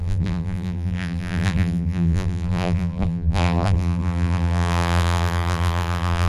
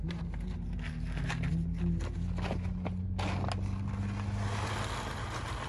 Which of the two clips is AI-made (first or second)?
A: first